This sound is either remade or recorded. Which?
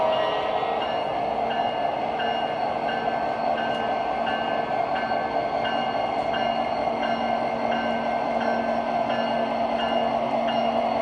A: recorded